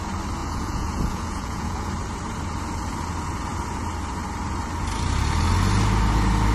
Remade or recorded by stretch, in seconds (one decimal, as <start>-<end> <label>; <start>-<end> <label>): 0.0-0.4 recorded; 0.4-1.9 remade; 1.9-6.5 recorded